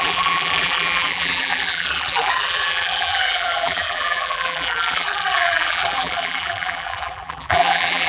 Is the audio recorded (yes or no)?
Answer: no